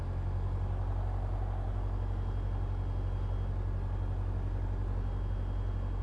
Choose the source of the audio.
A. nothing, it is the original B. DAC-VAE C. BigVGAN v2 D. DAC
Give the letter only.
A